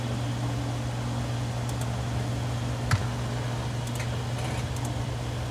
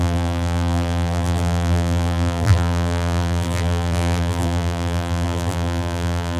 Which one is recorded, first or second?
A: first